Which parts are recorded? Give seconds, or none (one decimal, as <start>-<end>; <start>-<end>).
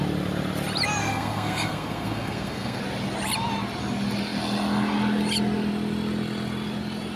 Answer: 0.0-1.0; 2.8-7.2